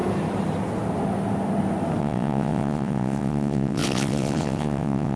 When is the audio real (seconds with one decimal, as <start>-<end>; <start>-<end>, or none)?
0.0-2.0